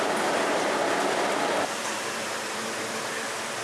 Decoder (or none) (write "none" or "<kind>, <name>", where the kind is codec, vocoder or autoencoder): vocoder, BigVGAN v2